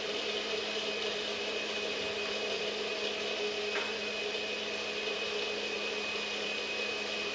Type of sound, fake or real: real